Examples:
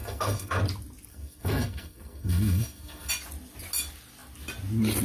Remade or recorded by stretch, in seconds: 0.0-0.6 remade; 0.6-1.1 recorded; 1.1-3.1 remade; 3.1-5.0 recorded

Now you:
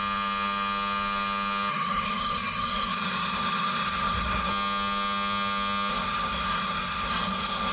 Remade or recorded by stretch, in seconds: 0.0-1.7 recorded; 1.7-4.5 remade; 4.5-5.9 recorded; 5.9-7.7 remade

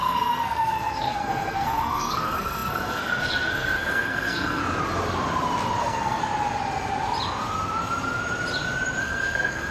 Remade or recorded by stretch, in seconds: 0.0-4.6 remade; 4.6-5.8 recorded; 5.8-6.2 remade; 6.2-9.0 recorded; 9.0-9.7 remade